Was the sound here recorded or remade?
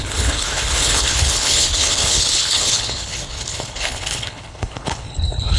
remade